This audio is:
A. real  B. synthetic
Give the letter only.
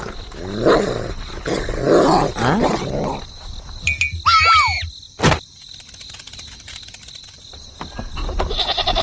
A